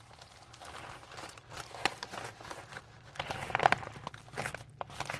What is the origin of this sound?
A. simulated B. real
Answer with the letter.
B